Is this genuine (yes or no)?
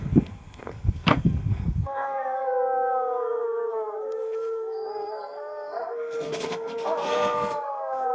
no